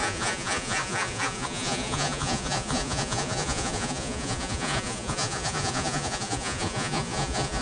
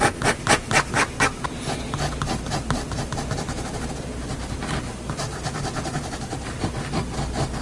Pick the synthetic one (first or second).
first